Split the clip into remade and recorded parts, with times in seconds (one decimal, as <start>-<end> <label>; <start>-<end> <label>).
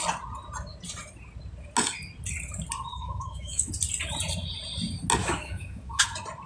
0.0-2.9 recorded; 2.9-3.7 remade; 3.7-5.2 recorded; 5.2-6.0 remade; 6.0-6.5 recorded